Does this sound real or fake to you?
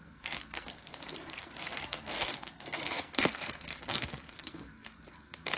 fake